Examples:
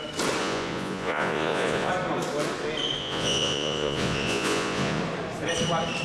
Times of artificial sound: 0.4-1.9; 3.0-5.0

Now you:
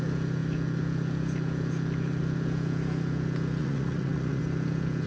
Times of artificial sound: 3.6-4.4

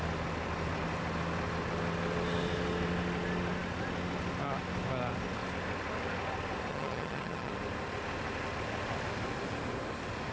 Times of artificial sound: 6.7-7.5

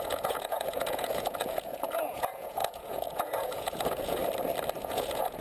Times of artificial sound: 0.0-4.2; 4.8-5.4

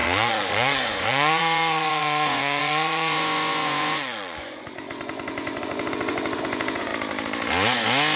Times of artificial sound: 0.0-6.9

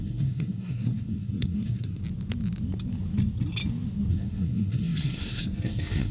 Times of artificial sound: 0.0-2.0; 4.1-6.1